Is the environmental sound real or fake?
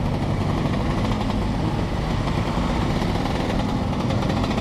real